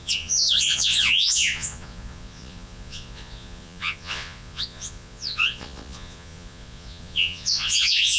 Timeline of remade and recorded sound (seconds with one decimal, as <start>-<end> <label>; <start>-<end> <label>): 0.0-8.2 remade